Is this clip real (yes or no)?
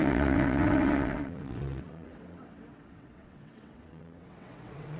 no